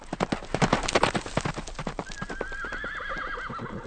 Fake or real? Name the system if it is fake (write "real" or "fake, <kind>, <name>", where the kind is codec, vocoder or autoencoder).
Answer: real